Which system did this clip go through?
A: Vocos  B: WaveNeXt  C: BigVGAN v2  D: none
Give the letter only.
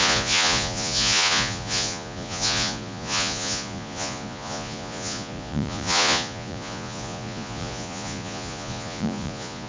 A